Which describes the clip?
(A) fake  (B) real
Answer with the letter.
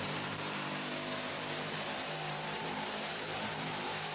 A